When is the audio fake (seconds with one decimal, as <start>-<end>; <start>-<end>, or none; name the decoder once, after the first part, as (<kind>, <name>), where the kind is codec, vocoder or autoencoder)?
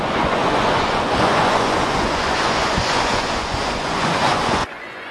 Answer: 0.0-5.1 (vocoder, Vocos)